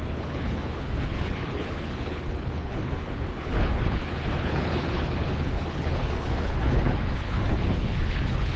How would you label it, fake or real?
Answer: fake